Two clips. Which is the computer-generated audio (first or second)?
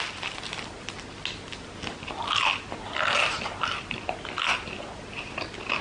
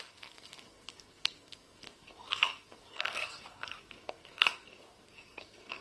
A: second